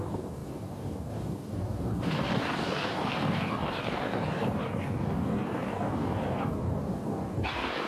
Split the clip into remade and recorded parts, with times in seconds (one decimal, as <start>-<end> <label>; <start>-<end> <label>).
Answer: 0.0-7.9 remade